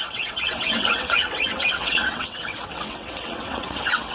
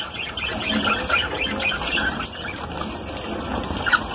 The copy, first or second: first